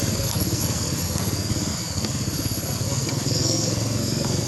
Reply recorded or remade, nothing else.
remade